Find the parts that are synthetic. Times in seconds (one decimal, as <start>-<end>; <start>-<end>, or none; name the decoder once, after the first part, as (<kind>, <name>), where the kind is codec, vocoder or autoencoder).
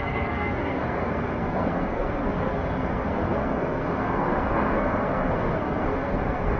0.0-6.6 (codec, SNAC)